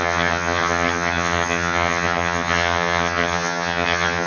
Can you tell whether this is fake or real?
fake